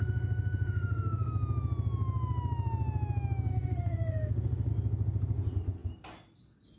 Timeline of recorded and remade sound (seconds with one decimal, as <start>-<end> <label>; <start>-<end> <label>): 0.0-1.3 remade; 1.3-3.5 recorded; 3.5-4.7 remade; 4.7-6.8 recorded